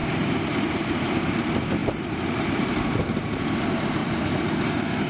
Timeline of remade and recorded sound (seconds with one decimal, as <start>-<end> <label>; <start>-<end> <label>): 0.0-1.2 remade; 1.2-1.8 recorded; 1.8-3.4 remade; 3.4-4.0 recorded; 4.0-4.6 remade; 4.6-5.1 recorded